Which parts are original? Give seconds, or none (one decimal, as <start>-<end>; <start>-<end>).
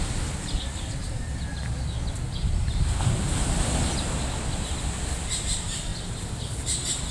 0.0-7.1